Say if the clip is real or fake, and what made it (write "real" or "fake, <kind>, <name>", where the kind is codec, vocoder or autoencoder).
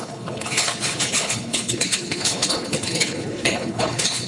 fake, codec, HILCodec